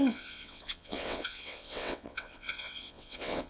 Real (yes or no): no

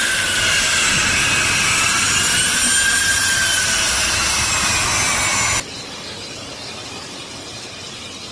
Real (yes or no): yes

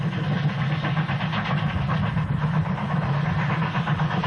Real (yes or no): yes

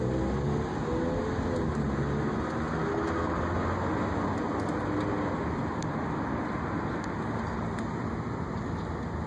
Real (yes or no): yes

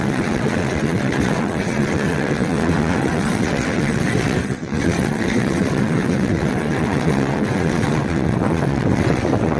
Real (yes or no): no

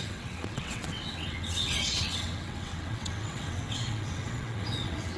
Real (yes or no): no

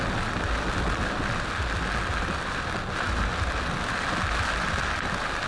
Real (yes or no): yes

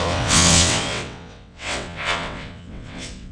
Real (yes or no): no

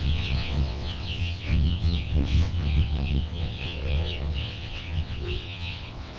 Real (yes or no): no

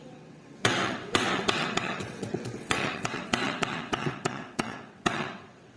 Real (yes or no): no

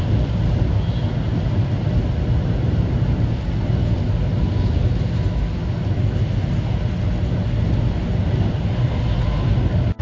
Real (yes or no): yes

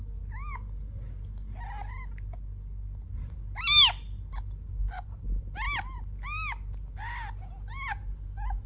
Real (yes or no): yes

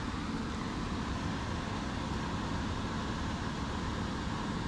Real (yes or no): yes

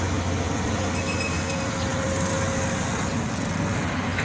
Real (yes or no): yes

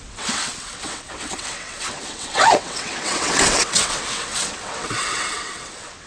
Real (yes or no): no